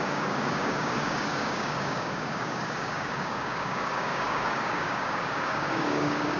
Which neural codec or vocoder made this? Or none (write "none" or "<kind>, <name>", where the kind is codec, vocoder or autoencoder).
codec, DAC